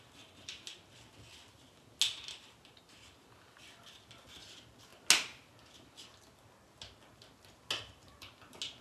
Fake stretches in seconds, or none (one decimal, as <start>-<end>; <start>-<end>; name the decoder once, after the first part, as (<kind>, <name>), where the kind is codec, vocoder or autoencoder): none